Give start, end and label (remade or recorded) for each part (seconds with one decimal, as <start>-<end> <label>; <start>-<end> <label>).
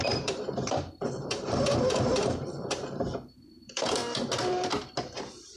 0.0-4.0 remade; 4.0-5.6 recorded